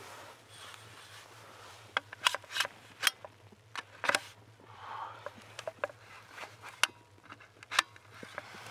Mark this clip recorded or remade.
recorded